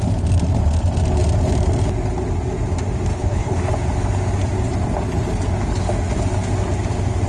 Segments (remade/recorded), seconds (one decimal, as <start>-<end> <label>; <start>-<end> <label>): 0.0-3.1 recorded; 3.1-3.7 remade; 3.7-7.3 recorded